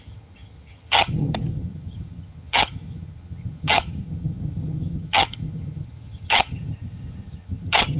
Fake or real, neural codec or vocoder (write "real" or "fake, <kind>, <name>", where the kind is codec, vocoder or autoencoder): fake, vocoder, HiFi-GAN